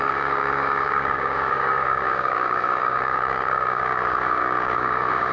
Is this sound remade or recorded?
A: remade